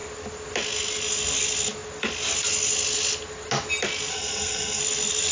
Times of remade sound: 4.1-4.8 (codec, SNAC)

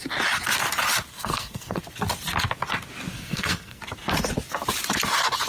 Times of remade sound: 1.1-1.8 (codec, SNAC); 3.1-3.8

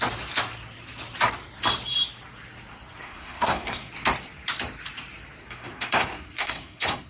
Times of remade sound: 3.0-3.9 (codec, SNAC); 5.4-7.1

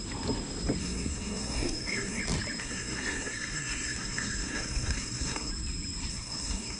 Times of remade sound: 0.8-2.2 (codec, SNAC); 2.6-5.5; 6.1-6.8